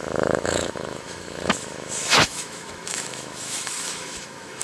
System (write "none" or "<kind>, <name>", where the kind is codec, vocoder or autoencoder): autoencoder, DAC-VAE